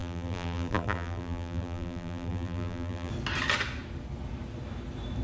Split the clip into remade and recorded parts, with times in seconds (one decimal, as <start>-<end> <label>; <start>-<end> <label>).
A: 0.0-3.1 remade; 3.1-5.2 recorded